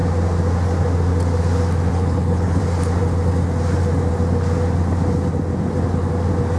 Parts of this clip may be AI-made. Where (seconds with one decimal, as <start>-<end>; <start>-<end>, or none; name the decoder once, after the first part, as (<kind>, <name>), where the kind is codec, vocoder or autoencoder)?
1.9-2.6 (codec, HILCodec)